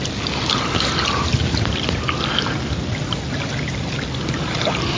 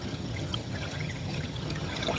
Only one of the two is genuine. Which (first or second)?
first